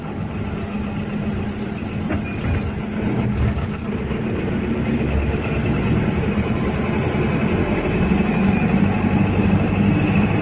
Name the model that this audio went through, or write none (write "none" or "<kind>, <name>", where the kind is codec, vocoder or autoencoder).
none